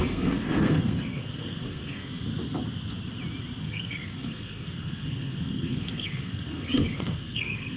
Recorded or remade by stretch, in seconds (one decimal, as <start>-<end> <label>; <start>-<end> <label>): 0.0-2.1 remade; 2.1-3.6 recorded; 3.6-7.8 remade